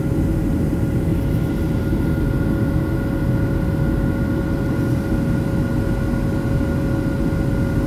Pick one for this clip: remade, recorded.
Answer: recorded